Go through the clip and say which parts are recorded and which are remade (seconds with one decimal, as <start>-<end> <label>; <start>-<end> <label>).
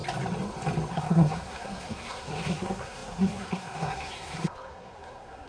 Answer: 0.0-0.9 recorded; 0.9-5.5 remade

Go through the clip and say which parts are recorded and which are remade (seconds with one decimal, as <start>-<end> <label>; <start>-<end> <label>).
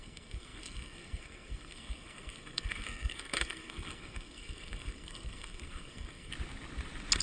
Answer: 0.0-6.3 remade; 6.3-7.2 recorded